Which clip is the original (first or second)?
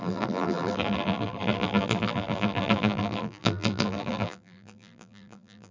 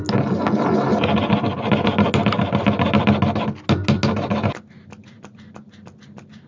second